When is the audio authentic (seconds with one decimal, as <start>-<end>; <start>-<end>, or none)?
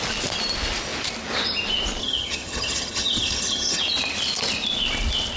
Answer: 0.0-2.0; 3.8-5.4